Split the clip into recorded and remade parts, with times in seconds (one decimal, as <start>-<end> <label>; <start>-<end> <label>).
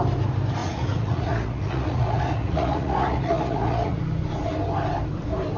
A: 0.0-0.6 recorded; 0.6-4.0 remade; 4.0-5.6 recorded